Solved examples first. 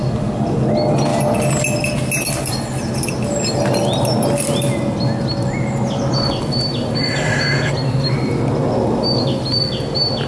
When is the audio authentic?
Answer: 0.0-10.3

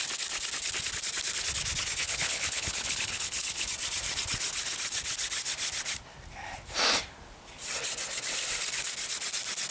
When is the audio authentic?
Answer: 0.0-2.0; 3.7-9.7

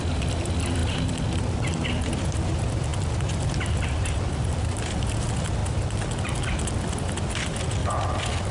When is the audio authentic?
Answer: 2.9-3.6; 5.6-6.8; 7.8-8.5

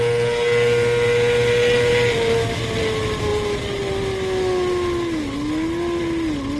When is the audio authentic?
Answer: 0.0-6.6

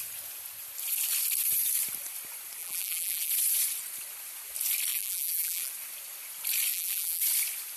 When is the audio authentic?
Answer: 0.0-2.6; 3.3-4.9; 5.7-6.7; 7.2-7.8

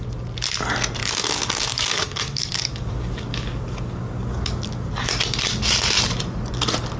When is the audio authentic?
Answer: 0.0-1.0; 4.9-7.0